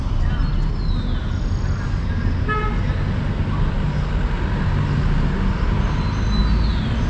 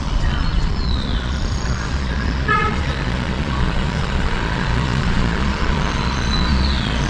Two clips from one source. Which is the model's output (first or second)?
second